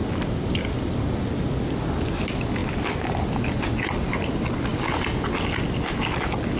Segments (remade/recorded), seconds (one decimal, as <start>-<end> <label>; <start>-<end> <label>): 0.0-6.6 recorded